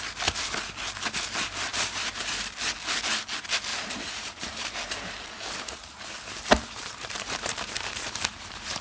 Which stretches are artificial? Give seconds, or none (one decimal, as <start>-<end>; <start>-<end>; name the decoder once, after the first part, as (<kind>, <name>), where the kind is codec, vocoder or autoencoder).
1.7-2.4 (vocoder, BigVGAN v2); 3.7-8.8